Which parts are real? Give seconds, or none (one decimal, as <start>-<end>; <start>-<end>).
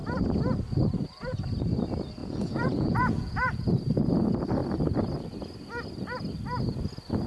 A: 0.0-2.2; 3.6-7.3